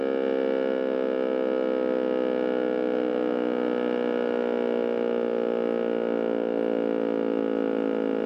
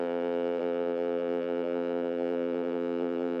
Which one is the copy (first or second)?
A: second